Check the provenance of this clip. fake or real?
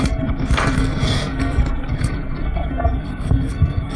fake